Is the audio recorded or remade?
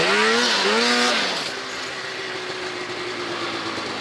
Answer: recorded